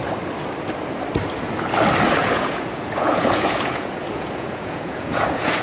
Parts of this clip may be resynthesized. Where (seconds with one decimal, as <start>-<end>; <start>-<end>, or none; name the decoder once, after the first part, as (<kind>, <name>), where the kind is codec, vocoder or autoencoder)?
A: 2.2-5.6 (vocoder, Vocos)